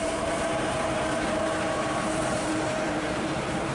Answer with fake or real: fake